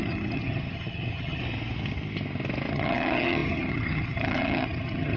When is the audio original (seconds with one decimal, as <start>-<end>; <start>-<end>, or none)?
1.4-2.7